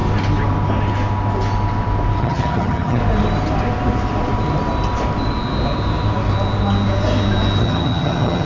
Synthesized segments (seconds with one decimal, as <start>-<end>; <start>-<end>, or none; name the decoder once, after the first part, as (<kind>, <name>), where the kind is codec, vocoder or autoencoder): 2.2-3.0 (vocoder, HiFi-GAN); 7.6-8.5